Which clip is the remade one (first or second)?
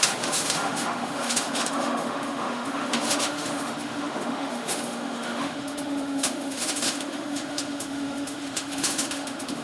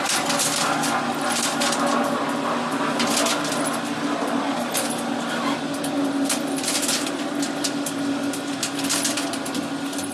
first